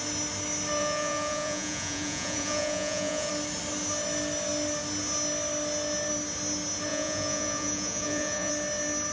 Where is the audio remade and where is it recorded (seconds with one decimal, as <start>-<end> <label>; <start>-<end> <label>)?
0.0-0.8 recorded; 0.8-3.3 remade; 3.3-6.9 recorded; 6.9-8.5 remade; 8.5-9.1 recorded